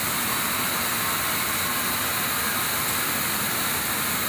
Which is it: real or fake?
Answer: real